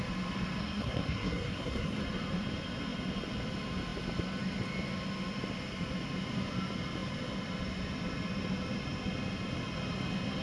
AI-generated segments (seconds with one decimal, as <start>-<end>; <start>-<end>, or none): 0.6-2.0